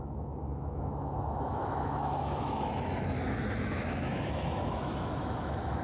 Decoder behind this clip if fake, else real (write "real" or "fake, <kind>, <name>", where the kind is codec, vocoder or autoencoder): fake, autoencoder, DAC-VAE